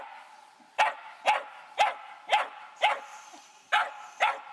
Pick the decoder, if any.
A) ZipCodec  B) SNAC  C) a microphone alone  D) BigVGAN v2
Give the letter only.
C